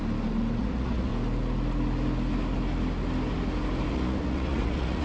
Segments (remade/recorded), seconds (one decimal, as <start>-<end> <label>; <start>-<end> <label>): 0.0-0.6 recorded; 0.6-1.1 remade; 1.1-3.9 recorded; 3.9-5.0 remade